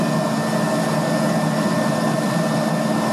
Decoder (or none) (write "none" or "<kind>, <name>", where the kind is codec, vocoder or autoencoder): none